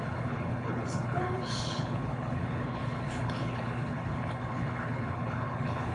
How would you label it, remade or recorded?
remade